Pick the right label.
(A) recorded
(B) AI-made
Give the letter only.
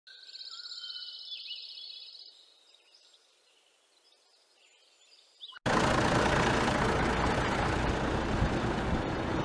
A